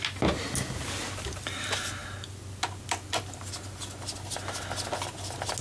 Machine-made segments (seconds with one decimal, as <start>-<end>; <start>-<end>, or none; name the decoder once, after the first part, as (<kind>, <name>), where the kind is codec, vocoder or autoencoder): none